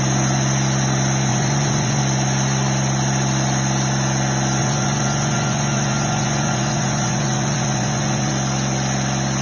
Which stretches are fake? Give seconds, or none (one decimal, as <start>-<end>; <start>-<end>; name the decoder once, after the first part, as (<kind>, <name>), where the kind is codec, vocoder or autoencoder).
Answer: 1.3-2.0 (vocoder, Vocos); 4.6-8.3